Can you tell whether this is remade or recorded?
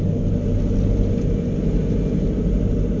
recorded